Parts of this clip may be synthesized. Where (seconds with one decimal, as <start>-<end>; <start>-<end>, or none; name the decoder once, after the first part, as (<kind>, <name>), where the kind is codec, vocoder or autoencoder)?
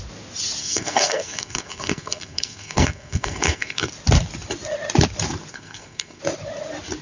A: 0.6-3.9 (codec, SNAC); 5.5-6.2